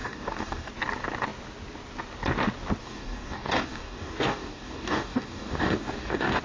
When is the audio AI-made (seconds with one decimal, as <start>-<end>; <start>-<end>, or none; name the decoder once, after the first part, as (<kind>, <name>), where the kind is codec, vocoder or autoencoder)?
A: 0.0-0.7 (codec, DAC); 2.8-6.4